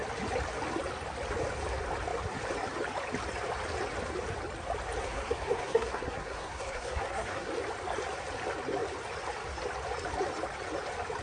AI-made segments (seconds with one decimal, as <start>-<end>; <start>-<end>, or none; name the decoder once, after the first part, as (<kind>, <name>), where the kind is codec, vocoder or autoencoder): 5.0-7.5 (codec, SNAC)

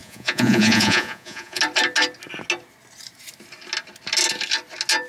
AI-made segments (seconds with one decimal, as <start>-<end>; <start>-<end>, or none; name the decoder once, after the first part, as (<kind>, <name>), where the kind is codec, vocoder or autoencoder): 0.0-1.6 (vocoder, Vocos)

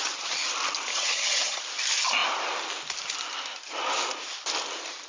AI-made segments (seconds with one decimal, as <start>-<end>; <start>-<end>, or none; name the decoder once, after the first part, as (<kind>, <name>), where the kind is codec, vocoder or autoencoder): 0.9-1.6 (vocoder, HiFi-GAN)

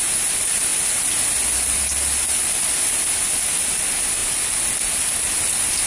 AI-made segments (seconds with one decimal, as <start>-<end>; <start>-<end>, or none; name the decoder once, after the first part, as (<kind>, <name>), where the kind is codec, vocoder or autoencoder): none